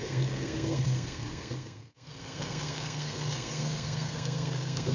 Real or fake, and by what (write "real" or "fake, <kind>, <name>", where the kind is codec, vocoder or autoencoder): fake, codec, SNAC